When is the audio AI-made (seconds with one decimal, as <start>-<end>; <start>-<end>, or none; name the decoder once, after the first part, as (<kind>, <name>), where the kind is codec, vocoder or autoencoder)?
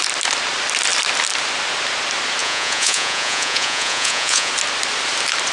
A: 2.4-4.5 (vocoder, Vocos)